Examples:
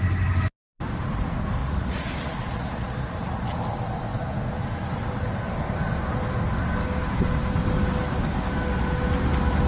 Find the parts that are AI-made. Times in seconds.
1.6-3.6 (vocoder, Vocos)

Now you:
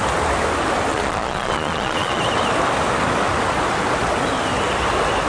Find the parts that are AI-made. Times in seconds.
0.9-2.2 (vocoder, Vocos)

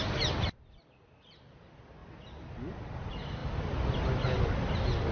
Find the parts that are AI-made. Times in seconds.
none